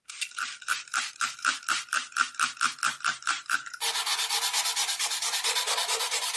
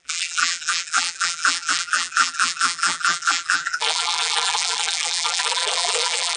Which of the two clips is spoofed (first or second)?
second